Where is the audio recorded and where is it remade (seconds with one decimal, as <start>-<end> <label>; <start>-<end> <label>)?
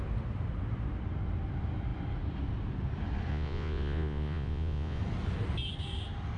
0.0-3.3 recorded; 3.3-5.0 remade; 5.0-6.4 recorded